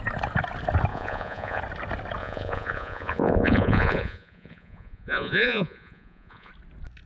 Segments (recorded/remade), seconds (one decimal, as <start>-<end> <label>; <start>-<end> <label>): 0.0-0.9 recorded; 0.9-1.6 remade; 1.6-2.2 recorded; 2.2-6.5 remade; 6.5-7.1 recorded